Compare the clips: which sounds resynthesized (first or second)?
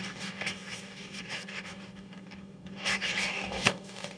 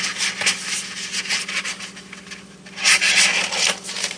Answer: first